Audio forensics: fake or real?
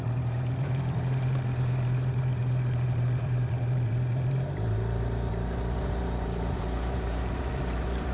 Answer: fake